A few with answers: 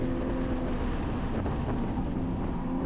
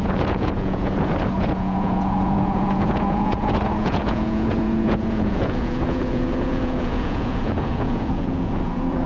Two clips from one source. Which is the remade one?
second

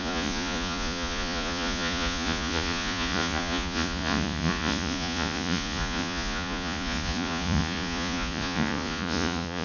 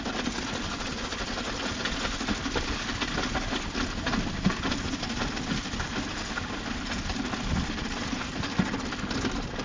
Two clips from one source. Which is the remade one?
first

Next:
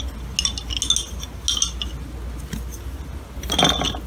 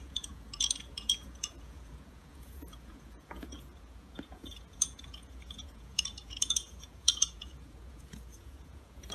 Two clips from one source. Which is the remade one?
second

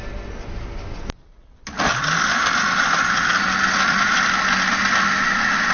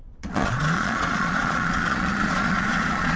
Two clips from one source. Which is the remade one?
second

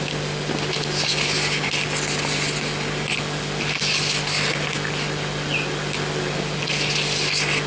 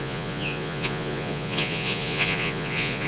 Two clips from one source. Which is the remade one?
second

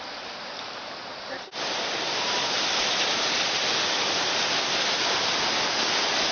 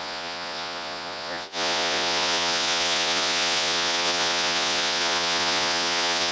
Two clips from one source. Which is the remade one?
second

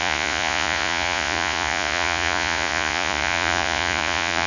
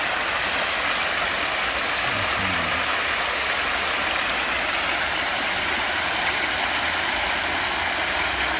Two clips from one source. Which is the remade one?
first